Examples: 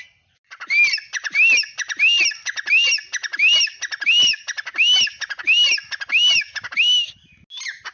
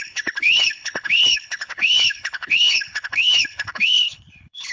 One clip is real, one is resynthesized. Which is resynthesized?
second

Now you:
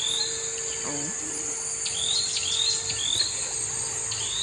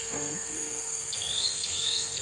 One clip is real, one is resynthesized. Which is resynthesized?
second